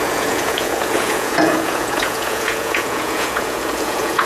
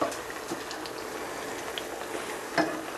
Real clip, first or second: second